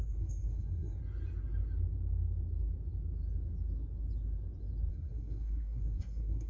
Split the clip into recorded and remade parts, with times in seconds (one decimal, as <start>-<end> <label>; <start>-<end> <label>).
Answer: 0.0-1.0 remade; 1.0-4.9 recorded; 4.9-6.5 remade